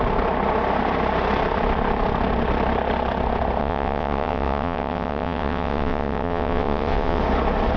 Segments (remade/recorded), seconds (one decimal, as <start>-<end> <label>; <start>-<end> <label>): 0.0-3.6 recorded; 3.6-7.2 remade; 7.2-7.8 recorded